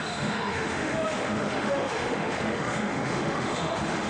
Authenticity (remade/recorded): remade